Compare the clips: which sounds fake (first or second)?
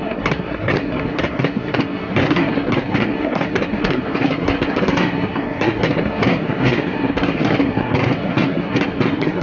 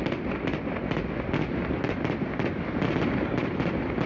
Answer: first